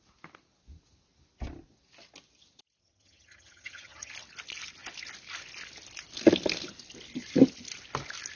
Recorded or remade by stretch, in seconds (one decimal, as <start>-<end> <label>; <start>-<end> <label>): 0.0-2.8 recorded; 2.8-4.1 remade; 4.1-8.4 recorded